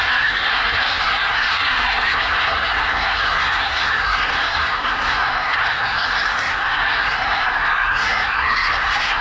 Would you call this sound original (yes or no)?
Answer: no